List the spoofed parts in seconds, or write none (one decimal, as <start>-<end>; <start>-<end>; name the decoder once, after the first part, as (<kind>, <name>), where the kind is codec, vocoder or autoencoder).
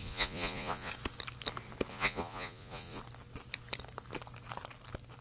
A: 0.0-0.9 (vocoder, Vocos); 1.9-3.0